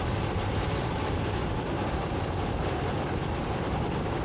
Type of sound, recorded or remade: recorded